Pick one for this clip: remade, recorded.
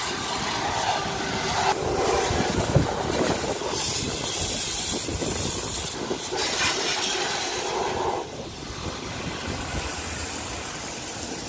recorded